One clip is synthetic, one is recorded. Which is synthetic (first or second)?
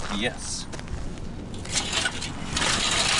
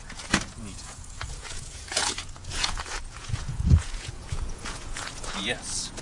second